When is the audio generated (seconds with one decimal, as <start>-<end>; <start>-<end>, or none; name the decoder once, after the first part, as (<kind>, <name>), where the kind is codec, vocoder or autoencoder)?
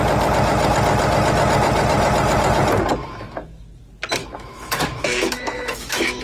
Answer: 3.0-3.6 (autoencoder, DAC-VAE); 4.2-6.2